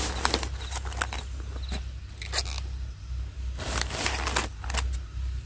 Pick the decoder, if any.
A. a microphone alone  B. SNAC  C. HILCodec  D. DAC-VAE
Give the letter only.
A